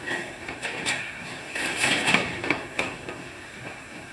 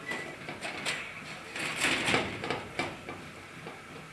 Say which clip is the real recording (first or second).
second